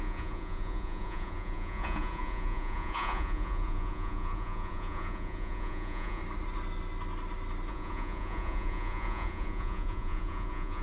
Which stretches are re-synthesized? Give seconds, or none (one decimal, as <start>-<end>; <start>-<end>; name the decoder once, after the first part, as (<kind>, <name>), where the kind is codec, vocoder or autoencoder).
0.0-6.2 (vocoder, Vocos); 7.7-10.8